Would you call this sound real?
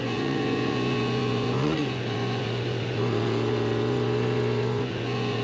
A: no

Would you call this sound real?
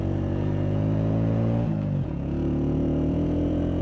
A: no